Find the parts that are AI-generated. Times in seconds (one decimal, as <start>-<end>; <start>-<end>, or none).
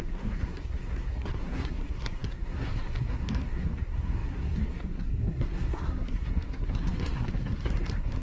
0.0-8.2